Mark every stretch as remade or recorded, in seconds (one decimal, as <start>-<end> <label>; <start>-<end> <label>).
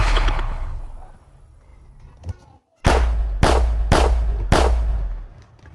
0.0-0.8 remade; 0.8-5.7 recorded